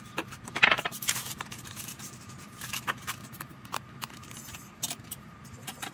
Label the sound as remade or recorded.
remade